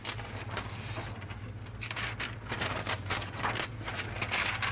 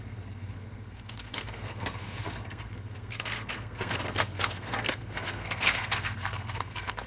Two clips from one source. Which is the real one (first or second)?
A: first